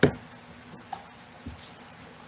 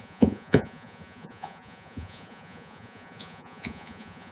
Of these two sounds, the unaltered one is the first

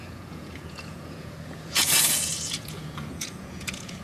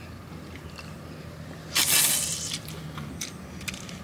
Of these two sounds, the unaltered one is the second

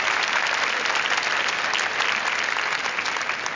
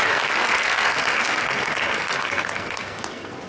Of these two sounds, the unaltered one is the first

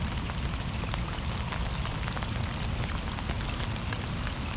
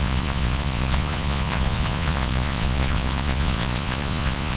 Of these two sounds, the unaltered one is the first